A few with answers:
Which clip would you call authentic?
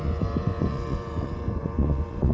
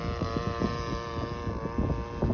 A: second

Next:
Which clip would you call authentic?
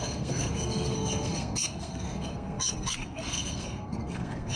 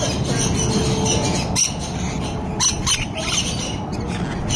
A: second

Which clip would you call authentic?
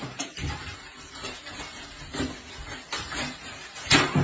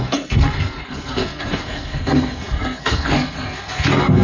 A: first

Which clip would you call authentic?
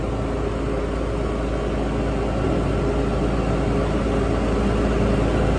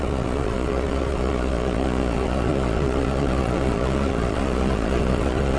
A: first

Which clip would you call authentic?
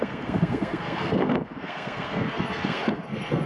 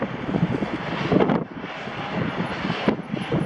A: second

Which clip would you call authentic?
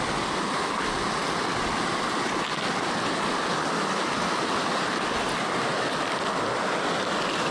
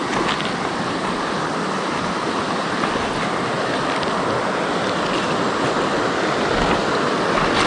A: first